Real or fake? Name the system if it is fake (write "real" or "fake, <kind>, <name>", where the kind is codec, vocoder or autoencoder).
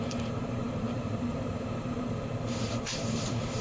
fake, vocoder, BigVGAN v2